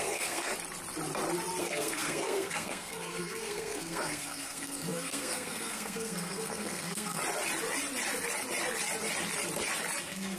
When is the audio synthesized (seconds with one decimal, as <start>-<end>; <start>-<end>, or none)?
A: 0.0-0.5; 1.6-7.2; 10.0-10.4